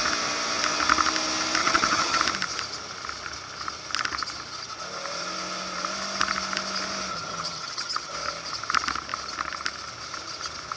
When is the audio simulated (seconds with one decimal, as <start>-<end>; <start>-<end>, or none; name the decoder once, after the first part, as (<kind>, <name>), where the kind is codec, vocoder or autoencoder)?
1.6-2.2 (vocoder, HiFi-GAN); 7.1-8.1